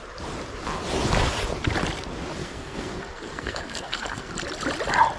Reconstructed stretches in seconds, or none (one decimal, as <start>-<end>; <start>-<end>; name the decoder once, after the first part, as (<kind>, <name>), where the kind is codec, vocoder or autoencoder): 2.4-4.3 (codec, SNAC)